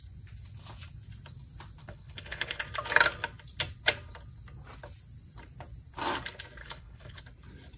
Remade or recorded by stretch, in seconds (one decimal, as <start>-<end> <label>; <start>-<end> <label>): 0.0-1.8 recorded; 1.8-2.6 remade; 2.6-6.6 recorded; 6.6-7.2 remade; 7.2-7.8 recorded